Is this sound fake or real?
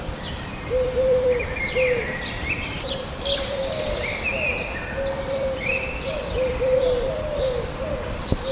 fake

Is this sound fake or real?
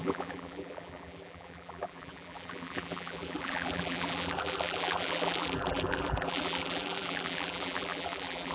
fake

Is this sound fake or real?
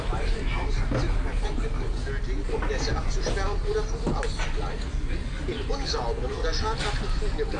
real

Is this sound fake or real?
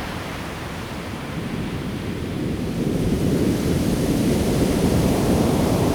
fake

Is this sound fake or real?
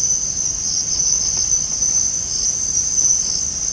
real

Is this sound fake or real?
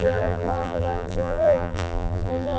fake